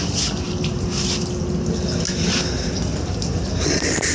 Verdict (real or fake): real